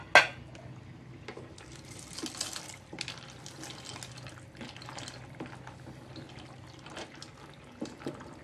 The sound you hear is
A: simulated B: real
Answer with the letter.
B